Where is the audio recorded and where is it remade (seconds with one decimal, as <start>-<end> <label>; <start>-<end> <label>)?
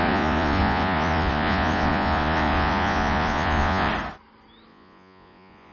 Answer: 0.0-3.9 remade; 3.9-4.7 recorded; 4.7-5.7 remade